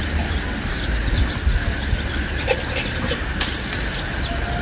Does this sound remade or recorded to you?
recorded